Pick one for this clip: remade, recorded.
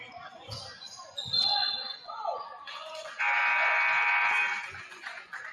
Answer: remade